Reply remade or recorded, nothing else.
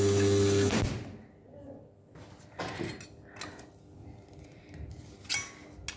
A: recorded